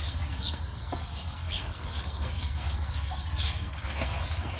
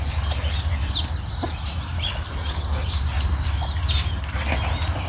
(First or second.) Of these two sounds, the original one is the second